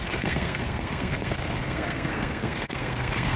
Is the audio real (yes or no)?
no